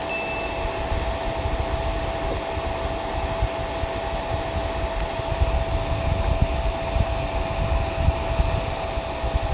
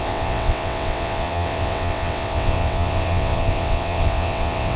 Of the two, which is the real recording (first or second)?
first